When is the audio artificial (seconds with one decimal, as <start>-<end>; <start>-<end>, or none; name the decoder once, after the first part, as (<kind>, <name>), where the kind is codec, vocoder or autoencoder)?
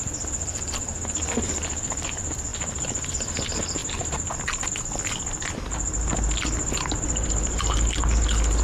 none